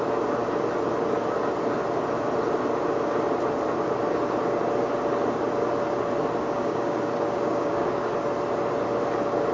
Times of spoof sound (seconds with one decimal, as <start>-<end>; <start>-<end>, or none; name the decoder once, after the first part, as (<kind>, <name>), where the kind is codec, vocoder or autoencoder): 6.4-8.1 (codec, DAC)